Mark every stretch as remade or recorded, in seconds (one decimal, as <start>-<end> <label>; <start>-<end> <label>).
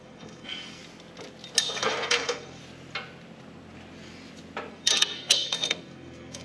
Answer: 0.0-0.8 remade; 0.8-1.6 recorded; 1.6-2.6 remade; 2.6-4.7 recorded; 4.7-6.4 remade